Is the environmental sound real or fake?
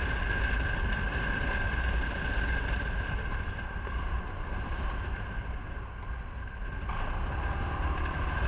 real